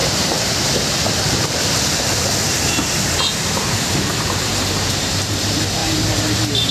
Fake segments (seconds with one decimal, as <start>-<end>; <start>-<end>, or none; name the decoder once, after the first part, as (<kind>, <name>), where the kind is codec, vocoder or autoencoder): 0.0-6.7 (vocoder, BigVGAN v2)